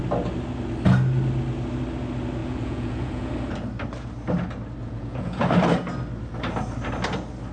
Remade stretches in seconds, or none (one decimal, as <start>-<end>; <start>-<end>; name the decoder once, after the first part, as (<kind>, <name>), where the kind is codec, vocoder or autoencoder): 2.4-3.3 (vocoder, Vocos); 4.8-5.4